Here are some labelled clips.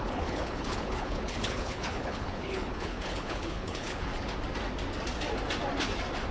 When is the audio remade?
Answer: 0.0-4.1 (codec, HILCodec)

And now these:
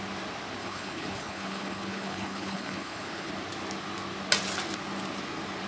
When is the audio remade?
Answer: 0.6-3.3 (codec, HILCodec)

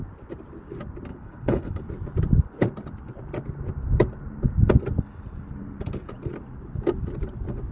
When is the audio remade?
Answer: 1.1-1.8 (codec, HILCodec)